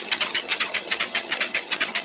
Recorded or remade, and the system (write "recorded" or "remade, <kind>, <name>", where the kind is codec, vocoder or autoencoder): remade, vocoder, HiFi-GAN